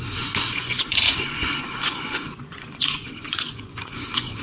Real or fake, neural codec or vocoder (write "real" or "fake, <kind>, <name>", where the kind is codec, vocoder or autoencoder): fake, vocoder, Vocos